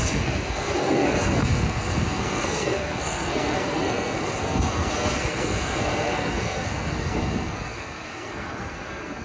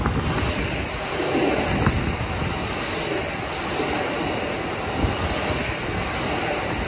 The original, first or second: second